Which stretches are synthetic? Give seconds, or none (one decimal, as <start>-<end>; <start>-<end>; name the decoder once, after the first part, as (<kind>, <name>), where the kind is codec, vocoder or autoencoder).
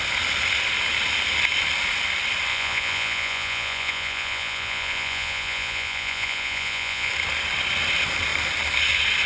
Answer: 2.5-7.1 (vocoder, Vocos)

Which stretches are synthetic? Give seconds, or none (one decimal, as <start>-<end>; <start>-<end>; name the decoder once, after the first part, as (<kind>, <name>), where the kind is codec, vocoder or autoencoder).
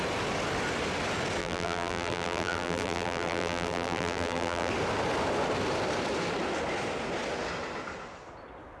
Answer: 1.4-4.7 (vocoder, BigVGAN v2)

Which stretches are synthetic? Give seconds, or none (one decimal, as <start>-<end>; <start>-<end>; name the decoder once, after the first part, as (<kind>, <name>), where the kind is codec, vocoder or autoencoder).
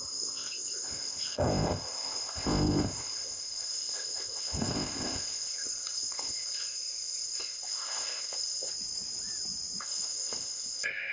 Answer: 0.0-8.7 (codec, ZipCodec); 9.8-11.1